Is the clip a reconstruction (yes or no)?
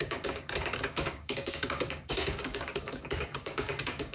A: yes